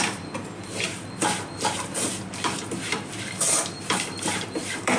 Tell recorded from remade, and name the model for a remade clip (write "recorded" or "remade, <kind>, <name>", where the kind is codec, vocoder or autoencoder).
remade, vocoder, BigVGAN v2